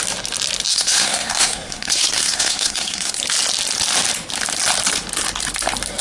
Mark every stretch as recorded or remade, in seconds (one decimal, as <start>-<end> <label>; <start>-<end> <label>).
0.0-0.7 recorded; 0.7-3.2 remade; 3.2-6.0 recorded